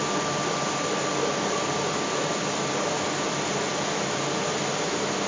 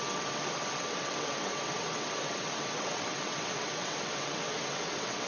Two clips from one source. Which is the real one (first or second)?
first